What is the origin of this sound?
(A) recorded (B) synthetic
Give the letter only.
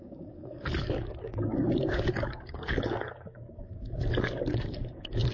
B